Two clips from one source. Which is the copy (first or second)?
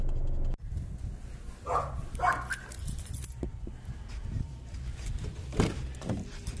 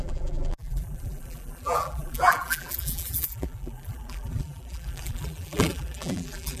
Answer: second